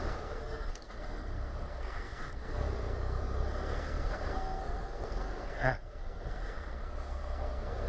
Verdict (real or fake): fake